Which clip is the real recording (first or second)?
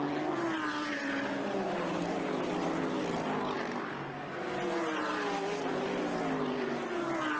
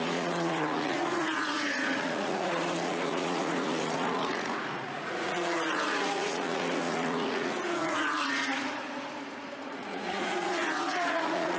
first